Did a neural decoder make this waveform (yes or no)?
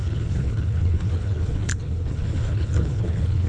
yes